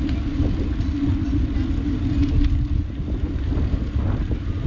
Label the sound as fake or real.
real